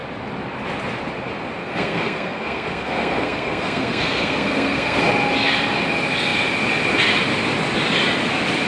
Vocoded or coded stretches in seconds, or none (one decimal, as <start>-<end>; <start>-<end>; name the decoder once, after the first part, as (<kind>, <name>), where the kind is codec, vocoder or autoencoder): 1.6-5.0 (codec, SNAC)